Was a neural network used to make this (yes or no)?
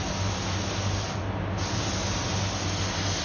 no